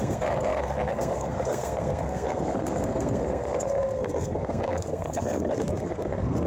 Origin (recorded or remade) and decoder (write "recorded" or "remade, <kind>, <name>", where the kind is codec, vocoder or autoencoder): remade, codec, SNAC